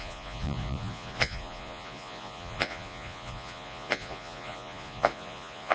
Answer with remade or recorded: remade